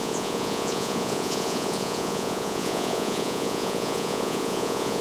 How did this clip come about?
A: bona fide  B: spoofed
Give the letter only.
B